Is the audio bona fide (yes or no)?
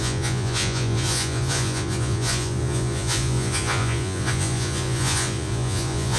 no